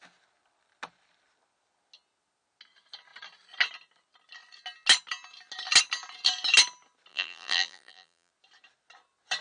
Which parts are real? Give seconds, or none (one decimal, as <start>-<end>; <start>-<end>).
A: 0.0-7.1; 8.3-9.4